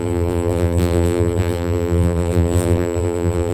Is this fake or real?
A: fake